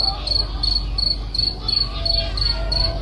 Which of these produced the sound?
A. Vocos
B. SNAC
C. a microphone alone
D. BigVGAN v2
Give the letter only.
C